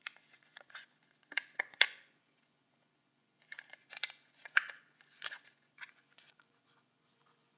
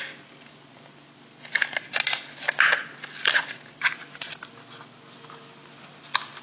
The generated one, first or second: first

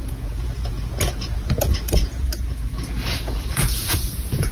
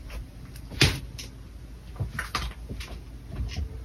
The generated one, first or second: first